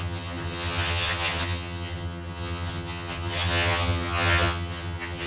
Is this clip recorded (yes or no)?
no